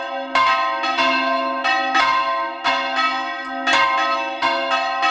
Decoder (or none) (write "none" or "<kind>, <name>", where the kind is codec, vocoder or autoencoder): none